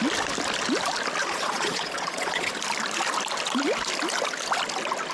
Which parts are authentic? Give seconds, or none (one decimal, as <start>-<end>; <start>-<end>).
0.0-1.2; 2.5-5.1